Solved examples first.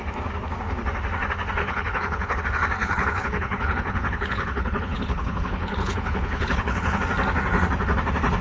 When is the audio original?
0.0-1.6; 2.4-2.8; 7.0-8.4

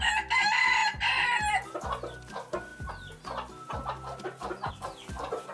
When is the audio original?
0.0-5.5

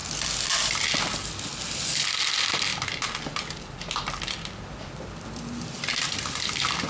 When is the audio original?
0.0-2.7

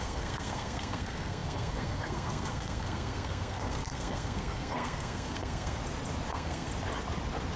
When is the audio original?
5.8-6.3; 6.7-7.6

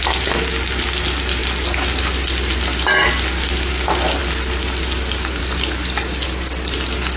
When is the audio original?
0.0-7.2